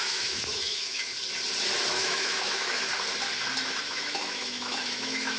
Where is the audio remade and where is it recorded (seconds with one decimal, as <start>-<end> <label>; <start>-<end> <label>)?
0.0-1.1 remade; 1.1-1.9 recorded; 1.9-2.9 remade; 2.9-3.8 recorded; 3.8-5.4 remade